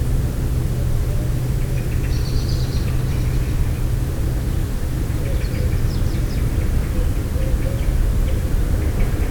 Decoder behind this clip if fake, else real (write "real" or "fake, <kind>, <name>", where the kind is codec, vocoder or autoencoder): fake, vocoder, BigVGAN v2